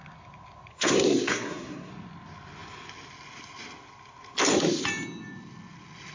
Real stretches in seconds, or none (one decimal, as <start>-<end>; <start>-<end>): 0.0-0.7; 1.9-6.1